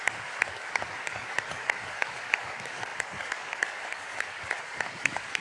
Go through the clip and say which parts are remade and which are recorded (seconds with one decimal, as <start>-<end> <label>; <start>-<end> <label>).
0.0-5.4 remade